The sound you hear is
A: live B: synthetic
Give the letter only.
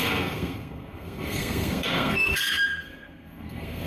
B